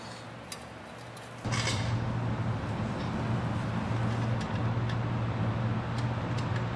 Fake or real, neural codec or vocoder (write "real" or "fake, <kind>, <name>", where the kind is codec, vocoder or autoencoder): real